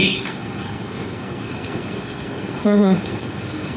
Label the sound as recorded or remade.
remade